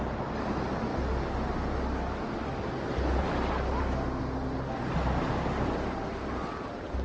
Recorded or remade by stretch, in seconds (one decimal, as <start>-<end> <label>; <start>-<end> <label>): 0.0-7.0 recorded